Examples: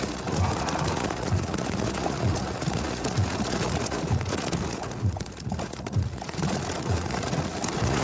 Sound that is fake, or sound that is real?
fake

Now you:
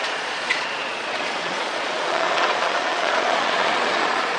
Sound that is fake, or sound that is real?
fake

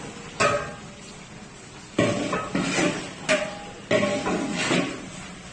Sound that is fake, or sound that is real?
real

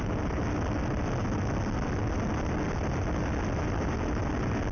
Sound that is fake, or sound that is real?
real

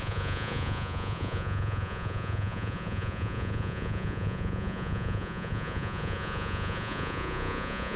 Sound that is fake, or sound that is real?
fake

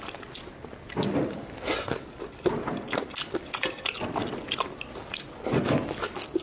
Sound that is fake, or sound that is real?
real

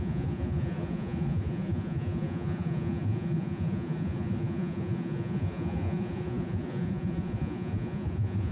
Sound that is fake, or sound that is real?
fake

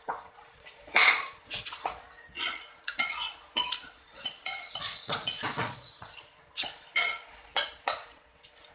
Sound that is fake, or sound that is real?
fake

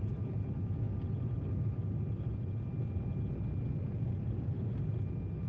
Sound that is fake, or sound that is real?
real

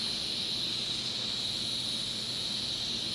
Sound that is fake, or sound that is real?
real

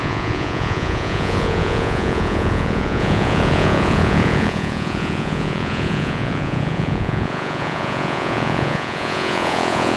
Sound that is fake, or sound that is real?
fake